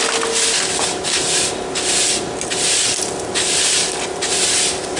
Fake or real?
real